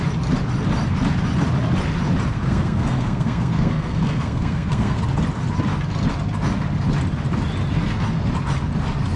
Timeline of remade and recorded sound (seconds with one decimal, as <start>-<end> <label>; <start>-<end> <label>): 0.0-2.3 recorded; 2.3-5.0 remade; 5.0-9.2 recorded